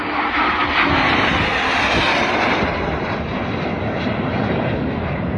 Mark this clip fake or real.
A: real